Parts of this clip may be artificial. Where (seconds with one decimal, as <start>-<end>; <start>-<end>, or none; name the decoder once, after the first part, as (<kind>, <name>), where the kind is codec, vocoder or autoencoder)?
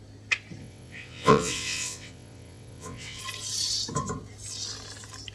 0.6-3.2 (vocoder, WaveNeXt)